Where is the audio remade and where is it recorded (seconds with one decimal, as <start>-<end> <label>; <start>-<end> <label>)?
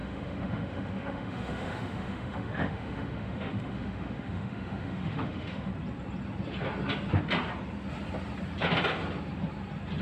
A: 0.0-5.7 remade; 5.7-10.0 recorded